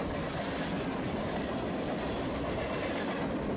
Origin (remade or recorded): recorded